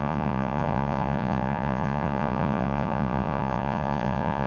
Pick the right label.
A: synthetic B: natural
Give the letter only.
A